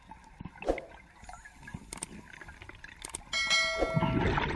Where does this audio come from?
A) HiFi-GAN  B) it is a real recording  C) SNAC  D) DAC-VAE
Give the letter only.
B